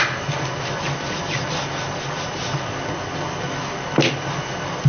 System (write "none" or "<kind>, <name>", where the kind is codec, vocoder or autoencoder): none